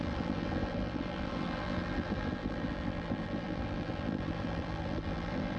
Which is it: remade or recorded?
remade